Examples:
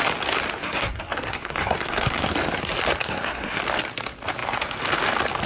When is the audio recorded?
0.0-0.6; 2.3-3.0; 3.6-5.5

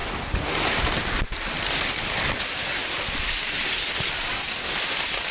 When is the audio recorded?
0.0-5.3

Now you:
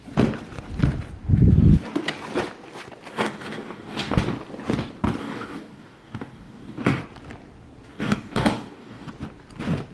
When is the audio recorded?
0.0-3.1; 4.2-5.2; 7.0-7.9; 9.1-9.9